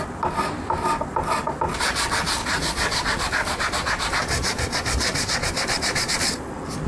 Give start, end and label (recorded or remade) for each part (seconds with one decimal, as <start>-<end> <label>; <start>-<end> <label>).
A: 0.0-2.4 recorded; 2.4-6.5 remade; 6.5-6.9 recorded